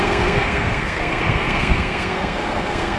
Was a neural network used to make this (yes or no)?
yes